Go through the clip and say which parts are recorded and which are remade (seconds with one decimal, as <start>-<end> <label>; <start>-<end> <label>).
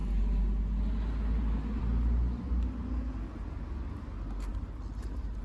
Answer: 0.0-4.5 recorded; 4.5-5.4 remade